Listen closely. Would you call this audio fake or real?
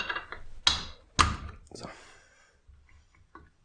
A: real